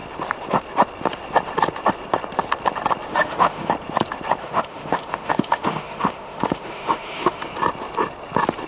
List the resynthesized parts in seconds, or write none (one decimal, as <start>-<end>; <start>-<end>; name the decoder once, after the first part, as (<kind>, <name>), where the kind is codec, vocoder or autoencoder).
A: 3.1-3.7 (autoencoder, DAC-VAE); 4.4-7.4